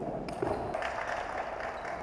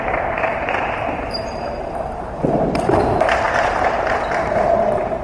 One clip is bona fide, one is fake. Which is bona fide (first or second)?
first